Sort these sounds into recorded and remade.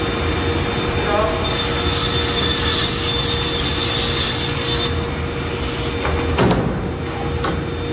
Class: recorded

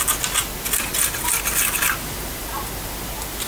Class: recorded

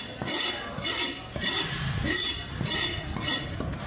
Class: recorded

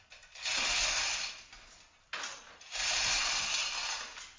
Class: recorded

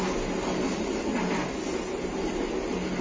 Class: recorded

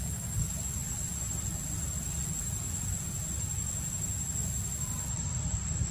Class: recorded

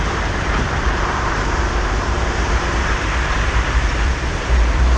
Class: remade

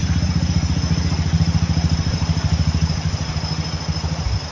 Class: recorded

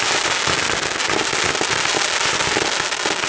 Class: recorded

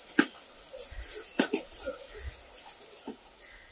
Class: recorded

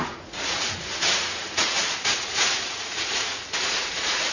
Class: remade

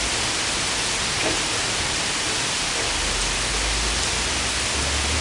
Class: recorded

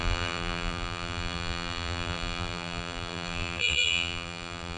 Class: remade